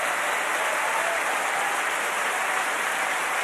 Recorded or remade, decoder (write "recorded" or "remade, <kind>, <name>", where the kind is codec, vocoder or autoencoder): recorded